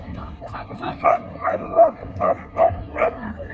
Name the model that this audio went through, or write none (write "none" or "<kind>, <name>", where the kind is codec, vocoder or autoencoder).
codec, SNAC